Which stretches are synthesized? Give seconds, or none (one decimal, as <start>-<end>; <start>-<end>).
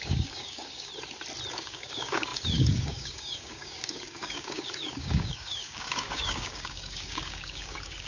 0.0-0.9; 1.5-8.1